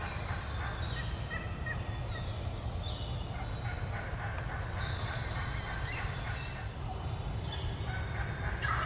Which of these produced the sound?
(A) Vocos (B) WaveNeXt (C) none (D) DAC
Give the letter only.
C